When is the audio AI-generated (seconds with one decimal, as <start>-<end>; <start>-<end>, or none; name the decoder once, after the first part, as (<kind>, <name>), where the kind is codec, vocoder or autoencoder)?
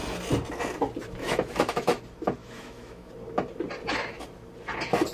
1.2-2.0 (autoencoder, DAC-VAE); 2.4-3.1